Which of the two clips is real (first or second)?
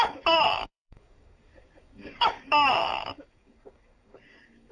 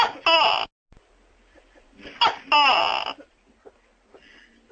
second